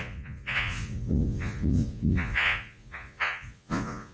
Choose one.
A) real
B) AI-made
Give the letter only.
B